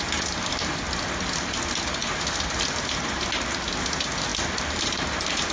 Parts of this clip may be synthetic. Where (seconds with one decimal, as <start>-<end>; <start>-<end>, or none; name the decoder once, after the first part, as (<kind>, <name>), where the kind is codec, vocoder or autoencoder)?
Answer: none